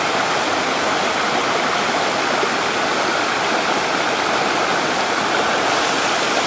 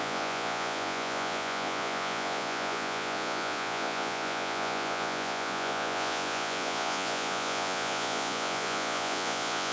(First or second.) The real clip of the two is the first